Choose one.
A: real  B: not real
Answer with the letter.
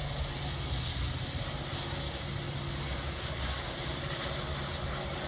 A